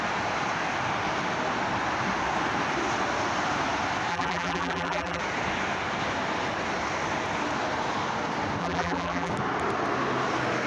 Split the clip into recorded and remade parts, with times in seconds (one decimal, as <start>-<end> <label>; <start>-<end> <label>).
0.0-4.1 recorded; 4.1-5.2 remade; 5.2-8.6 recorded; 8.6-9.3 remade; 9.3-10.7 recorded